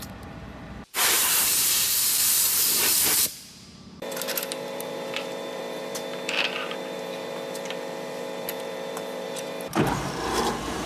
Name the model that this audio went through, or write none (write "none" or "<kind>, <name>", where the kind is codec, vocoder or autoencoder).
vocoder, BigVGAN v2